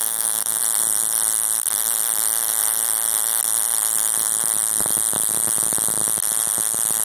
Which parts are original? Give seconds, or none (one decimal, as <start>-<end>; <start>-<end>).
0.6-7.0